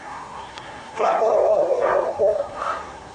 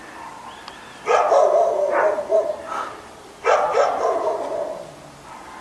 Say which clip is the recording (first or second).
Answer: second